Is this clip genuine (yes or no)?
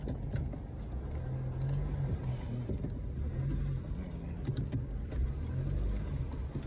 yes